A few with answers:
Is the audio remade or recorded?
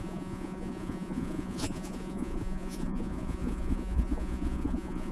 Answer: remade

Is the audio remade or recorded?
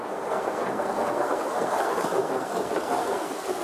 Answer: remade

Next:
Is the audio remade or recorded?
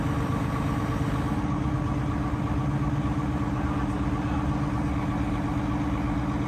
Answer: recorded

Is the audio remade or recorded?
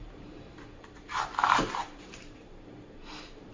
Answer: remade